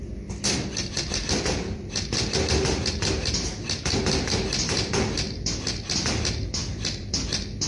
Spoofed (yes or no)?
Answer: no